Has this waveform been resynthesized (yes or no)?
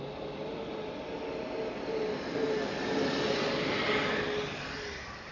no